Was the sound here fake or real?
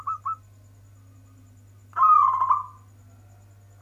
real